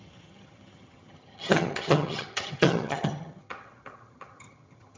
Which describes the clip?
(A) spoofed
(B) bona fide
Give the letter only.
A